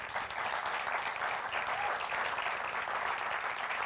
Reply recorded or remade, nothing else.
recorded